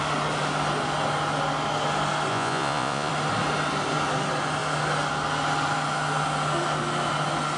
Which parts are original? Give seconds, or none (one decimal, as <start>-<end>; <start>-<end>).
0.0-2.3; 3.1-7.6